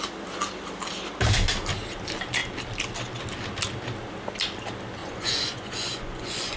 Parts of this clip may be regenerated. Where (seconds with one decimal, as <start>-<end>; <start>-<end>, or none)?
5.0-6.6